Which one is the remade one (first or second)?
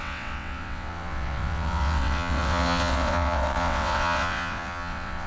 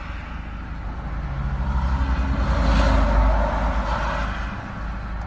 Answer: first